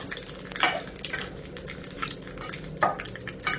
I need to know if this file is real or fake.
real